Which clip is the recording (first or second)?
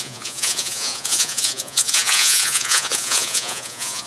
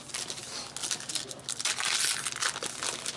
second